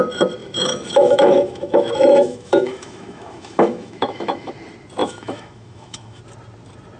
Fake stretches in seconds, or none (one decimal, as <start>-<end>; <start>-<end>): 0.4-4.5; 5.0-6.2